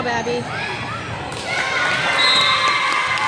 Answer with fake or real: real